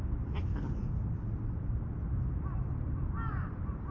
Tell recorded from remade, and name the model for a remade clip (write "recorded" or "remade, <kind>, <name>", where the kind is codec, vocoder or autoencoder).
recorded